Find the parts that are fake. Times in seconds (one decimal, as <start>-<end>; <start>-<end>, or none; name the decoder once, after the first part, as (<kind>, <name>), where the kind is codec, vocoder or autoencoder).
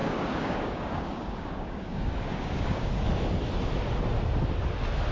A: 0.0-3.1 (codec, DAC)